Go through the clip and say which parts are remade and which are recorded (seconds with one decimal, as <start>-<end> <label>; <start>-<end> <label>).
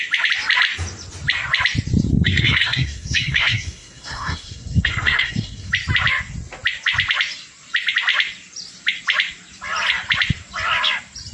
0.0-2.1 recorded; 2.1-5.7 remade; 5.7-11.3 recorded